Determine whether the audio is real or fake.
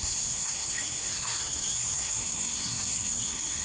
fake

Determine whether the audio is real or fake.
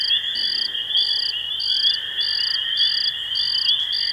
real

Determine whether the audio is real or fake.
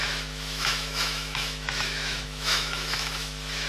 fake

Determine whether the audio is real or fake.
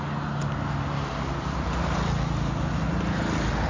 real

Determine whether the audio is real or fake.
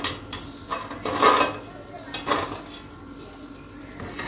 real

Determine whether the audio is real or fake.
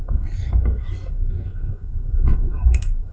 fake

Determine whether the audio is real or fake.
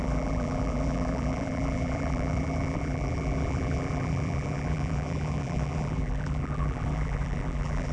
fake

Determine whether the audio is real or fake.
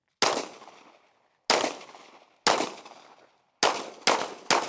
real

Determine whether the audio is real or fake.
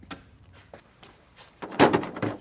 fake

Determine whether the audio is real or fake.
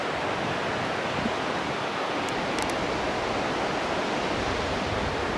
real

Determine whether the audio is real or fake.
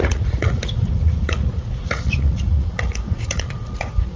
fake